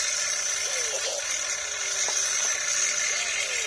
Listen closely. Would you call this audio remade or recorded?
recorded